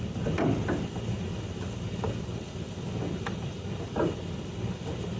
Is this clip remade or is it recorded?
recorded